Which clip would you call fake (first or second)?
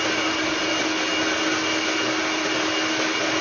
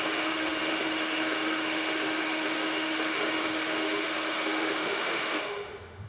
second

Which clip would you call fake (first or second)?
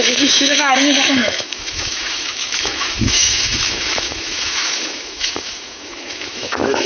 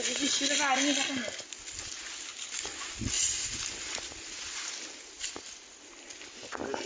first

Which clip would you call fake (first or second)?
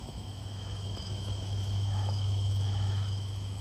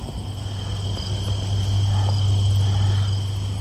first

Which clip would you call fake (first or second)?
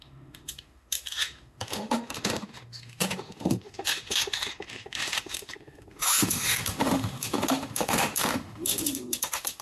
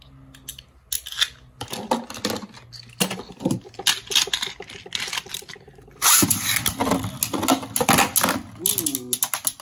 first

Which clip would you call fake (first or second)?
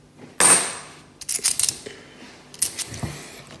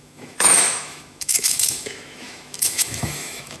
second